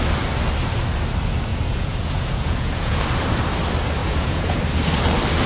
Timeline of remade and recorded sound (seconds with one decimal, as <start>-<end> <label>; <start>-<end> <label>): 0.0-1.5 recorded; 1.5-3.0 remade; 3.0-4.0 recorded; 4.0-4.6 remade; 4.6-5.5 recorded